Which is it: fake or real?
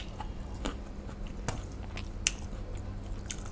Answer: real